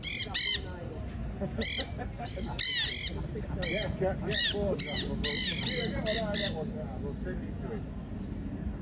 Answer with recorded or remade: recorded